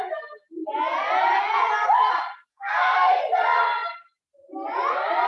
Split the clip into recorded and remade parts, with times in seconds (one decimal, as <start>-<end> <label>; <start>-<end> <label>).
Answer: 0.0-2.5 recorded; 2.5-3.2 remade; 3.2-5.3 recorded